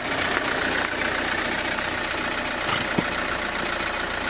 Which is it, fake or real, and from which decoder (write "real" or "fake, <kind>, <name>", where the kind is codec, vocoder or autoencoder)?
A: real